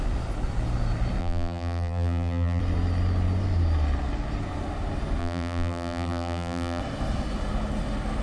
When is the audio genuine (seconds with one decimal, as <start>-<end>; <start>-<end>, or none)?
0.0-1.2; 2.6-5.2; 6.8-8.2